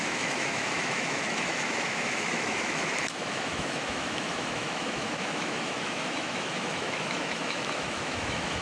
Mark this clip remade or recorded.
remade